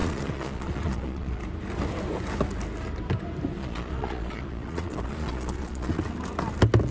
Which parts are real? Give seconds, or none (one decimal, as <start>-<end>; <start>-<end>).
1.4-3.6; 6.0-6.9